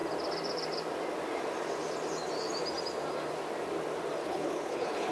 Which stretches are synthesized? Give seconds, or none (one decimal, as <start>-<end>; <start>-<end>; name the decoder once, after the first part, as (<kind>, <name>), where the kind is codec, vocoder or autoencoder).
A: 4.2-5.1 (codec, HILCodec)